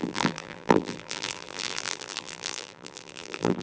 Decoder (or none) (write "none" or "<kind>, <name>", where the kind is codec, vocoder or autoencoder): vocoder, BigVGAN v2